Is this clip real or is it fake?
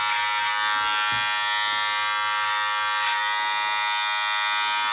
real